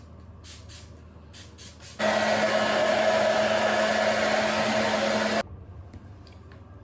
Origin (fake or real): real